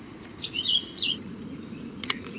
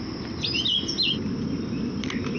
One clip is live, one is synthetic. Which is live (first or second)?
second